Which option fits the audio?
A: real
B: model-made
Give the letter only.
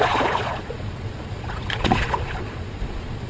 B